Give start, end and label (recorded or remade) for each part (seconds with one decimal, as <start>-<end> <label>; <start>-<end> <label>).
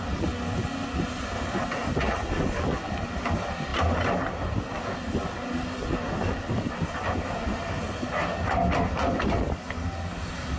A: 0.0-10.6 recorded